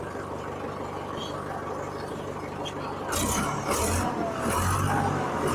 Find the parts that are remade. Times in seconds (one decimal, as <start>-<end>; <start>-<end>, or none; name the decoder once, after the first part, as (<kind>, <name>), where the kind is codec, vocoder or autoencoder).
none